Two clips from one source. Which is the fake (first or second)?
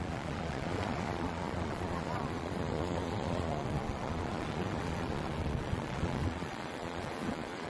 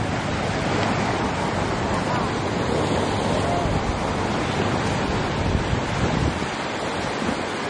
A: first